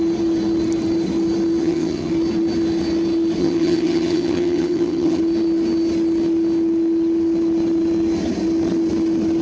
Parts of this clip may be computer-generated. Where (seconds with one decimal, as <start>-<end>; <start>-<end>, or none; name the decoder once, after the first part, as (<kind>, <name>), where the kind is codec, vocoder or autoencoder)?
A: 1.6-2.1 (vocoder, HiFi-GAN); 3.4-5.2